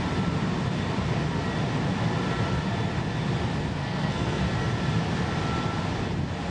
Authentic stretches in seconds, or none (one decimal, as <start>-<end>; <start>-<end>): 0.0-3.8; 4.4-6.5